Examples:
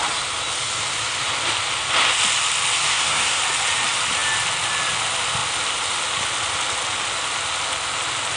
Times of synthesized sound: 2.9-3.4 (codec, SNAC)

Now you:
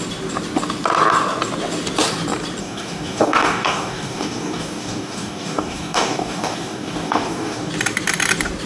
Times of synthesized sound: 2.6-7.7 (codec, DAC)

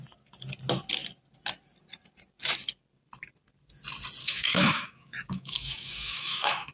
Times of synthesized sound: 4.2-6.7 (autoencoder, DAC-VAE)